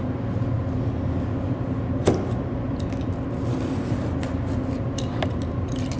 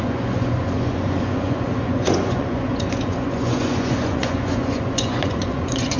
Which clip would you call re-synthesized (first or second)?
second